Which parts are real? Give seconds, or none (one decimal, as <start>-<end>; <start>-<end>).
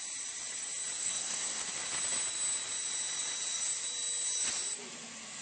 0.0-1.0; 1.6-5.4